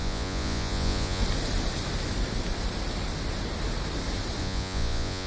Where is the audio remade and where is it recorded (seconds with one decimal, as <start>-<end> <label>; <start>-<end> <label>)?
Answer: 0.0-1.2 remade; 1.2-4.4 recorded; 4.4-5.3 remade

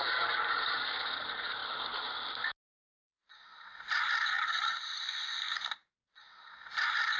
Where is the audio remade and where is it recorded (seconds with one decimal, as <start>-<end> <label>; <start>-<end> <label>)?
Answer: 0.0-7.2 recorded

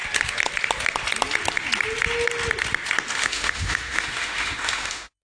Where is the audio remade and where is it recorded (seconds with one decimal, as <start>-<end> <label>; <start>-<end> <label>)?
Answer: 0.0-3.2 recorded; 3.2-5.2 remade

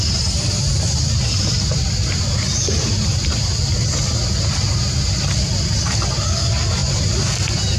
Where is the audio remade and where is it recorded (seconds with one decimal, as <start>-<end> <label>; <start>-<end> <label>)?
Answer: 0.0-7.8 recorded

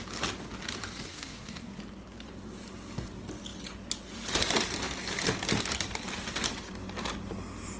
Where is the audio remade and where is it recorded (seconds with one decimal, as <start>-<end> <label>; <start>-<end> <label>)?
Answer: 0.0-1.1 recorded; 1.1-1.8 remade; 1.8-7.8 recorded

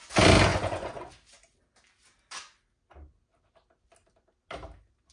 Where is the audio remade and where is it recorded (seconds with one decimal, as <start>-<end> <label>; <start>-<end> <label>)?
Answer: 0.0-0.5 recorded; 0.5-1.1 remade; 1.1-5.1 recorded

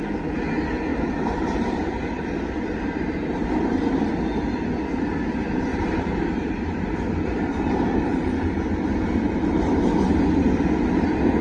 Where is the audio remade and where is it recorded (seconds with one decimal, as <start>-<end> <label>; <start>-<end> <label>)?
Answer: 0.0-0.9 recorded; 0.9-4.1 remade; 4.1-5.7 recorded; 5.7-10.2 remade; 10.2-11.4 recorded

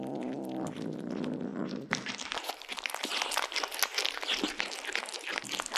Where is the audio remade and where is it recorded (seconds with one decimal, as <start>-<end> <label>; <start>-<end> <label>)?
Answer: 0.0-5.8 recorded